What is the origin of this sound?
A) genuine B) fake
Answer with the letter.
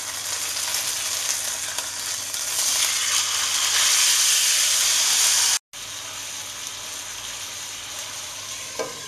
A